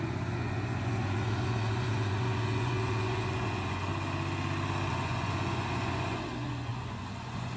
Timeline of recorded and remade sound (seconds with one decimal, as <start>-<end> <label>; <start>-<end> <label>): 0.0-3.9 remade; 3.9-4.9 recorded; 4.9-7.6 remade